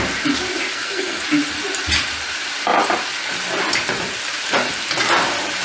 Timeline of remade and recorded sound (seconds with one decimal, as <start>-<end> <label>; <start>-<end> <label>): 0.0-0.7 recorded; 0.7-1.2 remade; 1.2-5.6 recorded